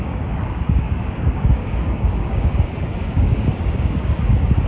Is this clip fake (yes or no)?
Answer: yes